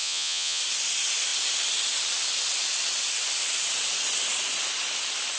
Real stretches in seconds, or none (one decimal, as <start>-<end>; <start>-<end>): 0.6-5.4